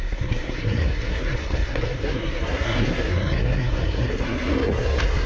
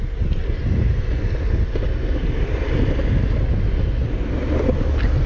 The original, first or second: second